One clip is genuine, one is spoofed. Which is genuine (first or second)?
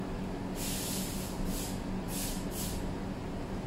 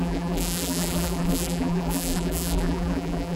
first